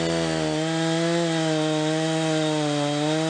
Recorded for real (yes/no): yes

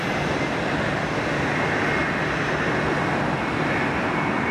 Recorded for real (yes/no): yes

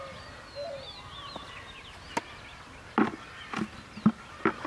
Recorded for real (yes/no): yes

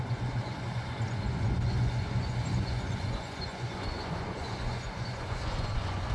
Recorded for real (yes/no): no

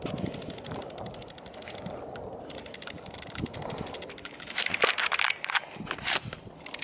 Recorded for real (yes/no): yes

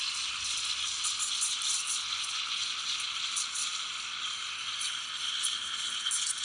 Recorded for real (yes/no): yes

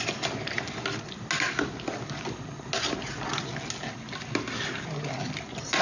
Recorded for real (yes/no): yes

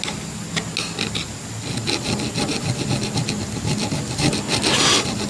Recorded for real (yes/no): yes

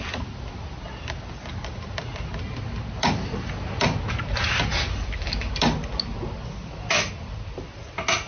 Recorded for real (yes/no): yes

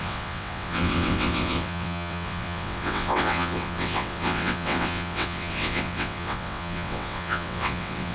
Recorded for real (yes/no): no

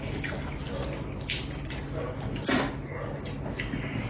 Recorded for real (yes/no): yes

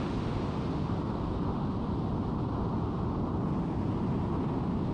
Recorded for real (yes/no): yes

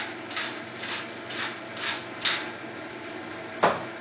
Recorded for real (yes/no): yes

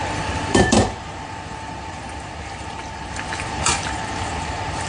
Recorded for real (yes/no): no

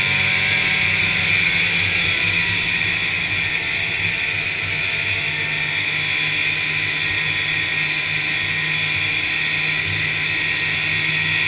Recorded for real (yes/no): yes